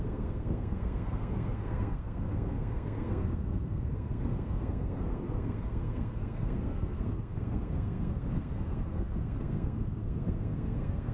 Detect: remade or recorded remade